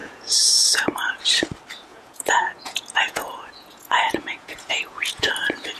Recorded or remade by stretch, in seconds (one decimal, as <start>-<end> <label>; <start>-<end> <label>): 0.0-1.2 remade; 1.2-1.9 recorded; 1.9-5.3 remade; 5.3-5.8 recorded